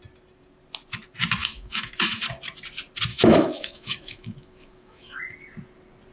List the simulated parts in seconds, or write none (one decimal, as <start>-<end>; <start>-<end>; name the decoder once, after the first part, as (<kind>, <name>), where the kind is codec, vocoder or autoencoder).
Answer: 1.4-2.2 (autoencoder, DAC-VAE); 3.1-5.2